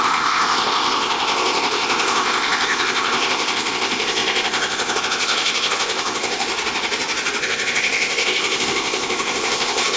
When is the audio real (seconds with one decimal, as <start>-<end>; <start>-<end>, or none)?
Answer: 6.5-7.4